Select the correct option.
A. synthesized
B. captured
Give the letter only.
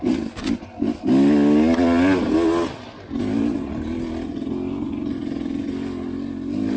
B